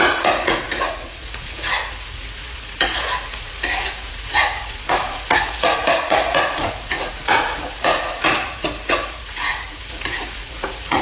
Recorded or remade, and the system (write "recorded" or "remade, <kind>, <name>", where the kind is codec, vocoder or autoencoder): remade, vocoder, Vocos